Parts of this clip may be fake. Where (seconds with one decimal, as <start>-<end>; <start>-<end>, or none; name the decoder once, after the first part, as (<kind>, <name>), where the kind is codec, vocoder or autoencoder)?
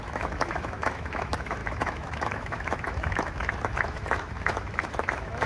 0.0-5.5 (autoencoder, DAC-VAE)